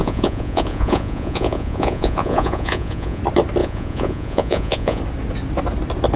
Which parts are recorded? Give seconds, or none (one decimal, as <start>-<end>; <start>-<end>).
3.2-3.6; 5.0-6.2